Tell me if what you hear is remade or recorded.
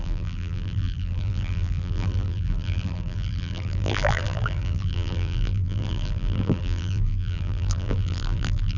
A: remade